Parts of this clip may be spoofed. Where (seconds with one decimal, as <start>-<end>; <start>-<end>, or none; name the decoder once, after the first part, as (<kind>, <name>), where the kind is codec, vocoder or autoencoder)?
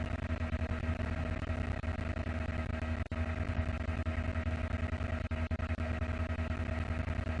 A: none